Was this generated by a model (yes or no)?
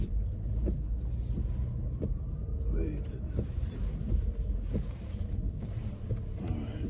yes